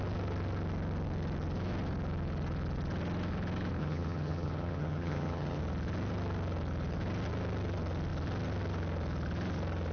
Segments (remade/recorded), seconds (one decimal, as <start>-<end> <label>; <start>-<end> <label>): 0.0-3.8 recorded; 3.8-5.6 remade; 5.6-9.9 recorded